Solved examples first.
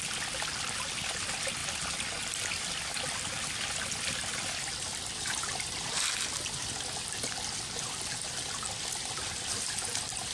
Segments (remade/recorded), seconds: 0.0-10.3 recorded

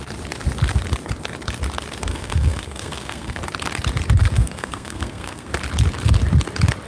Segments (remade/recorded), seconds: 0.0-2.1 recorded; 2.1-3.4 remade; 3.4-4.2 recorded; 4.2-5.5 remade; 5.5-6.9 recorded

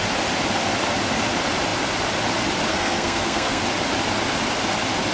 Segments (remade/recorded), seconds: 0.0-2.7 recorded; 2.7-3.6 remade; 3.6-5.1 recorded